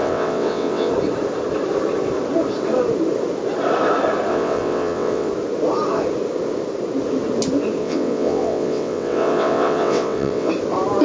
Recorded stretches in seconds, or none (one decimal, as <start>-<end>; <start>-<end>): 0.9-4.3; 5.3-7.8; 10.5-11.0